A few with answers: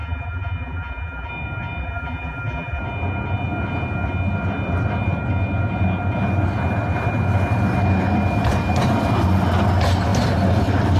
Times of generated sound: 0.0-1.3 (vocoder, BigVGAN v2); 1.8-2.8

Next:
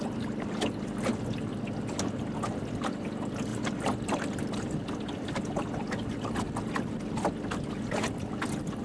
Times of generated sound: 3.5-4.8 (vocoder, BigVGAN v2)

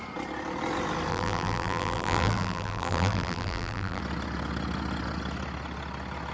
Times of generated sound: 1.1-4.0 (vocoder, BigVGAN v2)

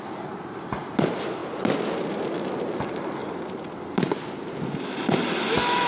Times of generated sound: 1.4-2.1 (vocoder, BigVGAN v2); 3.2-5.5

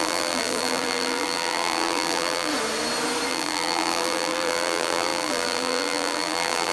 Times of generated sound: 0.0-2.5 (vocoder, BigVGAN v2); 3.3-6.7

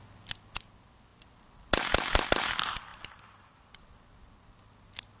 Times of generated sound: 2.9-3.6 (vocoder, BigVGAN v2)

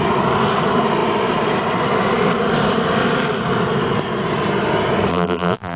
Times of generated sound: 5.1-5.8 (vocoder, BigVGAN v2)

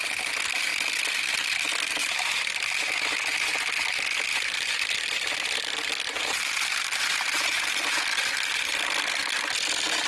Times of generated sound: 2.0-2.7 (vocoder, BigVGAN v2); 4.3-8.0